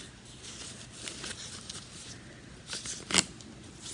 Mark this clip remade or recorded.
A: recorded